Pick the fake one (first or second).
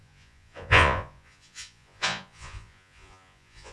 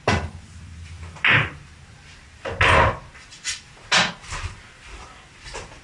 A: first